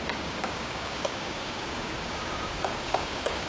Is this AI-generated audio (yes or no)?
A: yes